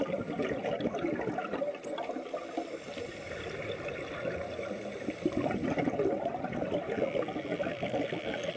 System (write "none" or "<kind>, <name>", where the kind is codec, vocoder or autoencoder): none